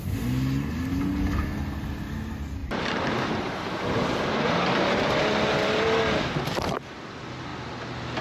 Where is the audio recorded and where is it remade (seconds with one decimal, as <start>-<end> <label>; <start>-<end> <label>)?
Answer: 0.0-2.6 recorded; 2.6-5.1 remade; 5.1-8.2 recorded